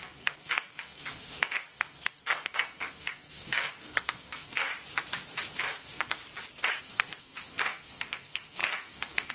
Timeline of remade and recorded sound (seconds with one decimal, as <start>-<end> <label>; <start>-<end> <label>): 0.0-4.7 remade; 4.7-5.6 recorded; 5.6-6.2 remade; 6.2-6.8 recorded; 6.8-9.3 remade